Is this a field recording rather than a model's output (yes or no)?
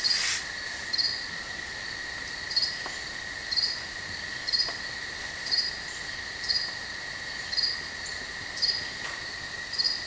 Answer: yes